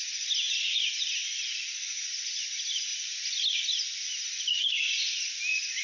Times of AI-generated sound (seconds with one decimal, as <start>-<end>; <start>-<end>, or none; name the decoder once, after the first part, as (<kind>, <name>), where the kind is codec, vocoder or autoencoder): none